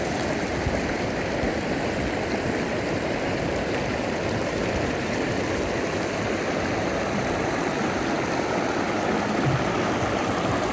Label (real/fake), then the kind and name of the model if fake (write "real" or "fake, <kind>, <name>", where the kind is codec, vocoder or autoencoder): real